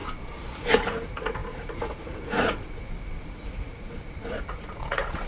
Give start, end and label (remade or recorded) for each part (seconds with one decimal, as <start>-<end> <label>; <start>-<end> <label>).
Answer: 0.0-0.6 recorded; 0.6-5.3 remade